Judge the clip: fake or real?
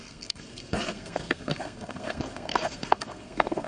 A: fake